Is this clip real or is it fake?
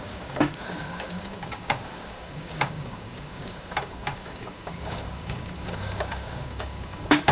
fake